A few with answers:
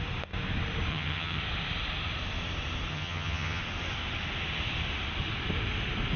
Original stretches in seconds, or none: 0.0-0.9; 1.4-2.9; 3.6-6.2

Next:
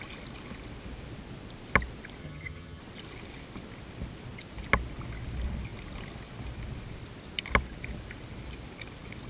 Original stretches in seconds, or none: 0.0-2.2; 2.8-9.3

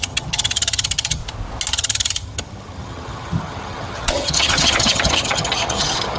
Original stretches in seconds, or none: 1.2-1.7

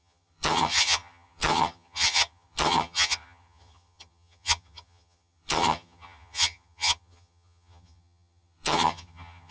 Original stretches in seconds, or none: none

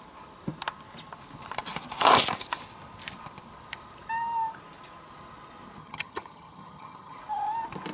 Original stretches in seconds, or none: 0.0-5.8; 7.2-7.9